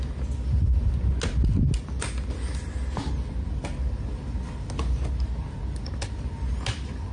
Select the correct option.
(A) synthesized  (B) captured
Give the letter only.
B